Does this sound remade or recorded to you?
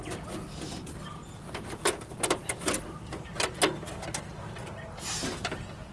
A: recorded